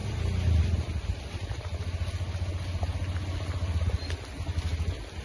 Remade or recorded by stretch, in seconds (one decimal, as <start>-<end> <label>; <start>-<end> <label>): 0.0-5.2 recorded